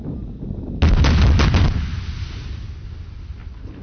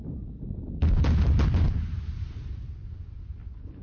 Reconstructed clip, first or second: second